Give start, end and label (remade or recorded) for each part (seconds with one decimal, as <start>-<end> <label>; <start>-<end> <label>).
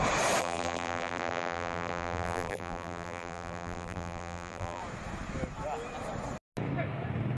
0.0-0.4 recorded; 0.4-4.8 remade; 4.8-7.4 recorded